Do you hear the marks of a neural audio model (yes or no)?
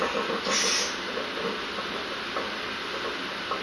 no